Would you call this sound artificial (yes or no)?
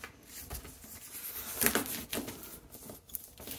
no